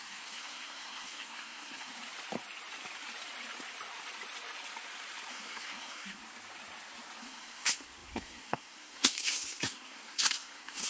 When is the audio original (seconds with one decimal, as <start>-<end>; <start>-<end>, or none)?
1.9-5.3; 6.2-7.2